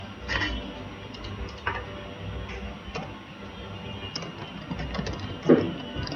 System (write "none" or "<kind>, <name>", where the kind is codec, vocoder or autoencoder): none